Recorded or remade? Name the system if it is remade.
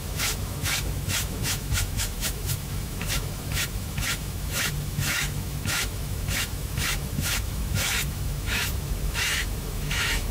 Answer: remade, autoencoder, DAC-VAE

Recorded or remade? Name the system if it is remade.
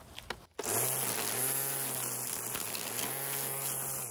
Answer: recorded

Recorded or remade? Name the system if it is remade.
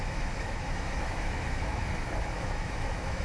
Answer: remade, autoencoder, DAC-VAE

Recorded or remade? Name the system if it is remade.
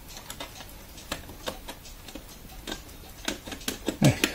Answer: recorded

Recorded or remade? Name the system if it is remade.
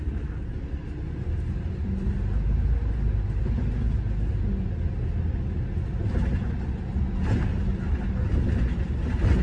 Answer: recorded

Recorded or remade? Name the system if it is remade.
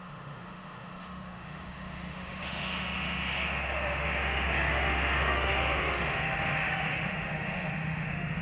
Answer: remade, autoencoder, DAC-VAE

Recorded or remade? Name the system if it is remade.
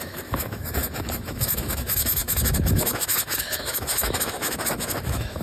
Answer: remade, autoencoder, DAC-VAE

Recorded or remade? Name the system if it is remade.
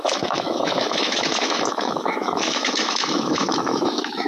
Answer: remade, autoencoder, DAC-VAE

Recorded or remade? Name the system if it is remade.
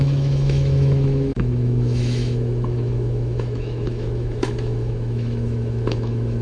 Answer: remade, autoencoder, DAC-VAE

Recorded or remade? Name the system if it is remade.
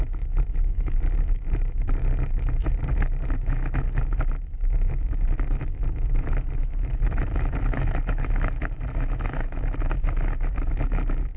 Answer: remade, autoencoder, DAC-VAE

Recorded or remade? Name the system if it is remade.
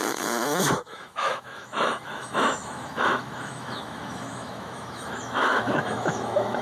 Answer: remade, autoencoder, DAC-VAE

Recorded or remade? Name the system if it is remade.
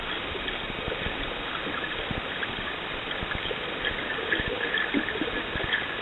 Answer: recorded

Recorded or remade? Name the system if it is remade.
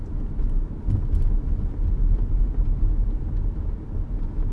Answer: recorded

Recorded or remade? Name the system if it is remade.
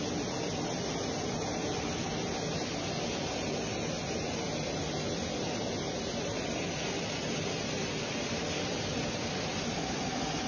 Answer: recorded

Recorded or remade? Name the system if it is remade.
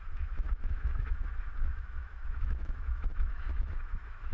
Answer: remade, autoencoder, DAC-VAE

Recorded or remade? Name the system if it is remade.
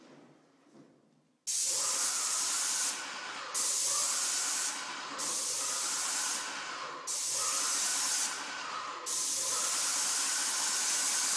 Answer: recorded